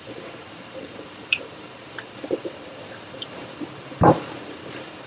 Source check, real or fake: fake